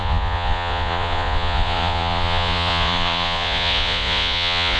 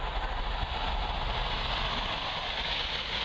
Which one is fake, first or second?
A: first